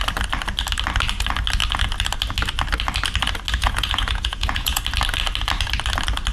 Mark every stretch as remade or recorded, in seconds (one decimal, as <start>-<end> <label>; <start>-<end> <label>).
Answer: 0.0-3.6 recorded; 3.6-4.8 remade; 4.8-6.3 recorded